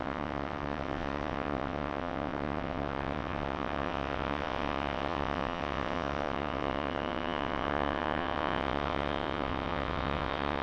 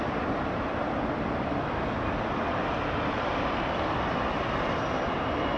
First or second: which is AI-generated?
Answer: first